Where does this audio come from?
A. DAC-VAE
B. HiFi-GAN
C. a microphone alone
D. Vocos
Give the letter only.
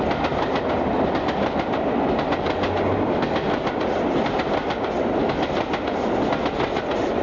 C